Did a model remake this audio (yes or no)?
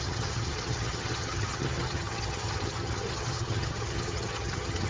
yes